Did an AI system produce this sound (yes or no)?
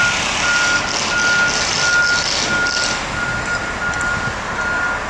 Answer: no